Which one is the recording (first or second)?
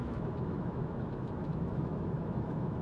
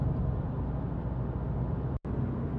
second